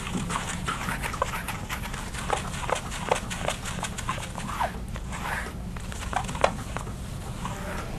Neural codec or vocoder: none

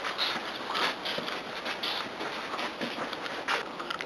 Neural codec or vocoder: none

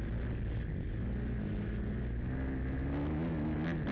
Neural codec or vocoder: none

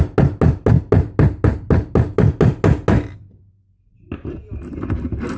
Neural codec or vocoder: none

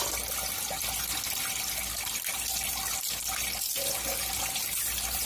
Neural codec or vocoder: none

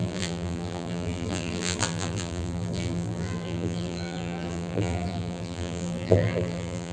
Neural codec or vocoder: vocoder, BigVGAN v2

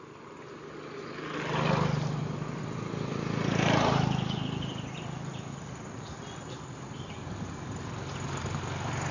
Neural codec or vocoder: none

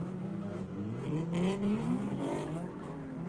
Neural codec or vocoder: none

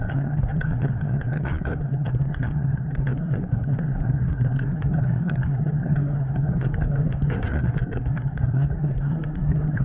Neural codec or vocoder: codec, SNAC